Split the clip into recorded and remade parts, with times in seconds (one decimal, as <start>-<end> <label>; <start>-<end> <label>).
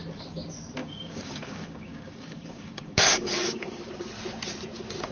0.0-0.8 recorded; 0.8-3.8 remade; 3.8-5.1 recorded